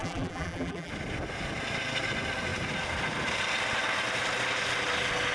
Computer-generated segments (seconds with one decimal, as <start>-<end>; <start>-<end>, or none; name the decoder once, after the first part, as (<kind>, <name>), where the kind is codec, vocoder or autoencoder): 0.0-0.9 (vocoder, BigVGAN v2)

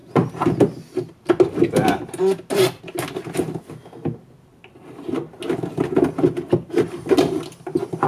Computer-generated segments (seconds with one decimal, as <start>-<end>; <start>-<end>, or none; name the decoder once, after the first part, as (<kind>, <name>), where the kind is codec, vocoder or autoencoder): none

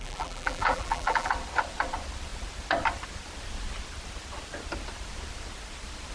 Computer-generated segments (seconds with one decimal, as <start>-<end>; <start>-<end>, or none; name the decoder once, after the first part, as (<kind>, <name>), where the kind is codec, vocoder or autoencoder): 0.0-1.3 (vocoder, BigVGAN v2)

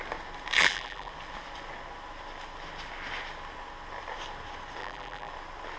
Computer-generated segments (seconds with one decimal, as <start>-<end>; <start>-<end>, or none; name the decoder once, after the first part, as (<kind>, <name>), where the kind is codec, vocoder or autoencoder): 0.6-1.1 (vocoder, BigVGAN v2); 4.8-5.3

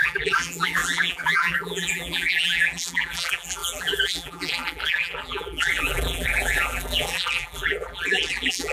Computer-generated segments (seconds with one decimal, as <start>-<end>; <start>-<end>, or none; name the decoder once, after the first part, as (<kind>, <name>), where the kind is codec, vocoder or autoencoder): 0.0-8.7 (vocoder, BigVGAN v2)

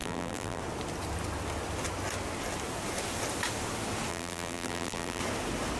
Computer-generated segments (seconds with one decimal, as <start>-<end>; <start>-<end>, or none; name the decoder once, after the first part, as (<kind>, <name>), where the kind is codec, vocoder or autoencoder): 0.0-0.6 (vocoder, BigVGAN v2); 4.1-5.2

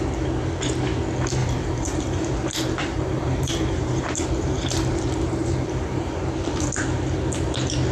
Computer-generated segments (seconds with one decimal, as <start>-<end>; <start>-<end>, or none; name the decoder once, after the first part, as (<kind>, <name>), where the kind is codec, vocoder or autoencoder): 1.4-6.1 (vocoder, BigVGAN v2)